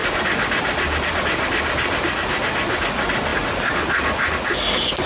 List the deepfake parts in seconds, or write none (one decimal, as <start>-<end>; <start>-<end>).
none